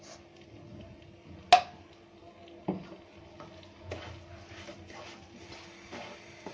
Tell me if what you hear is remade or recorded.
recorded